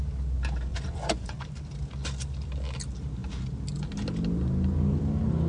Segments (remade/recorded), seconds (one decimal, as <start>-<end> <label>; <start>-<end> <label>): 0.0-0.7 recorded; 0.7-1.4 remade; 1.4-5.5 recorded